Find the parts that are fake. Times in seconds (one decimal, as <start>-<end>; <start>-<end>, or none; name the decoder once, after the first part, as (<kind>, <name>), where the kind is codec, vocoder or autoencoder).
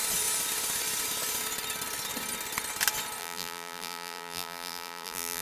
3.2-5.4 (vocoder, BigVGAN v2)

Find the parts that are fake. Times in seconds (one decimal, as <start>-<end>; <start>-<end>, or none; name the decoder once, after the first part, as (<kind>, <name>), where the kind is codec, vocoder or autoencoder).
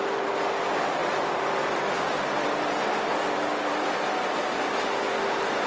1.0-4.4 (vocoder, BigVGAN v2)